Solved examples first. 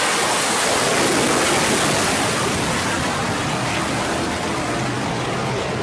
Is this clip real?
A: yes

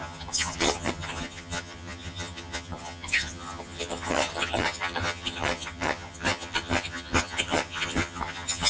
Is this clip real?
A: no